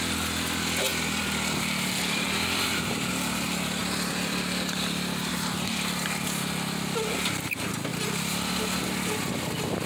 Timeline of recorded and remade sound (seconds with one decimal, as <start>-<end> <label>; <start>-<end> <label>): 0.0-0.9 recorded; 0.9-3.1 remade; 3.1-3.8 recorded; 3.8-5.3 remade; 5.3-7.9 recorded; 7.9-8.6 remade; 8.6-9.9 recorded